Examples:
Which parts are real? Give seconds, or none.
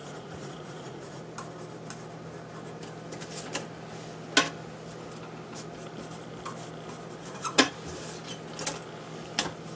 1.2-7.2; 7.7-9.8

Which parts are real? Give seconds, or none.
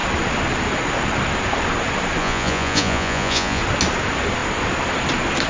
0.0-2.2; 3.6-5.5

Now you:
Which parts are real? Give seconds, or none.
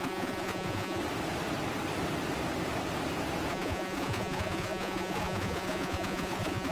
1.0-3.5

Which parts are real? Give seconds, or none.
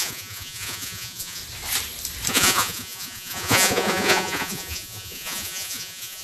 1.4-2.3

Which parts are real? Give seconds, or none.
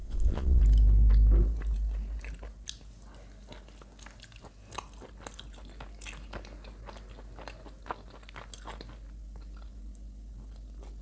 0.6-11.0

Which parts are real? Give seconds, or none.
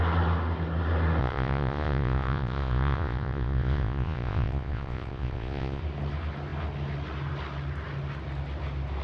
0.0-1.2; 5.8-9.0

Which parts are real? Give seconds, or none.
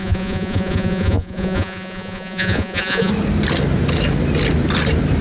3.1-5.2